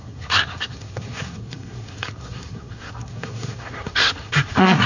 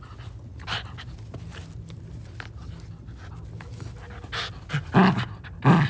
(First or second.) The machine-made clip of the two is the first